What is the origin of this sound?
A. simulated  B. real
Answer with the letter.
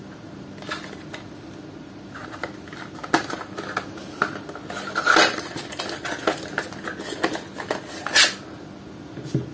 B